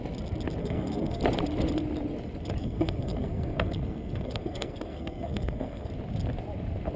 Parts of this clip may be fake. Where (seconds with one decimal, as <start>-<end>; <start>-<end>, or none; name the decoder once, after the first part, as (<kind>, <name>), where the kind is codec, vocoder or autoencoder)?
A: 0.6-1.2 (codec, SNAC); 2.6-5.9